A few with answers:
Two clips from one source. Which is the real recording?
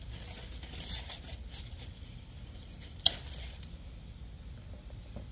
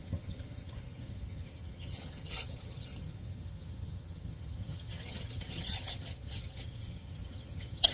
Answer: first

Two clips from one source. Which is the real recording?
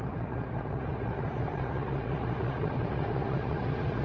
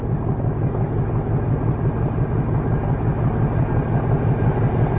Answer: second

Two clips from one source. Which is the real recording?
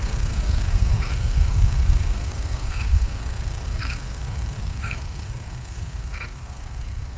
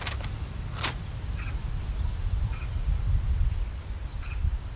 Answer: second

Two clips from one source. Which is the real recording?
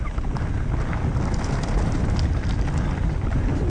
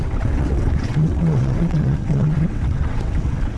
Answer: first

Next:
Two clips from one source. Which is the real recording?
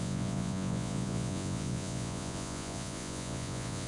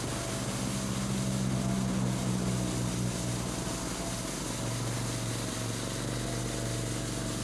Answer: second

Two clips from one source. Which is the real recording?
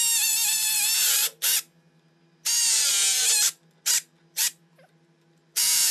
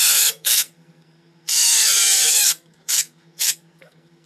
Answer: first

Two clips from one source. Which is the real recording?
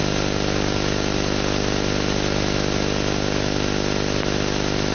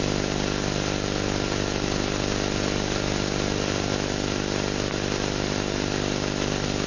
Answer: first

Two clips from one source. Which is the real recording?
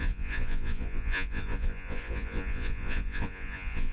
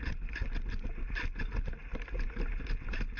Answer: second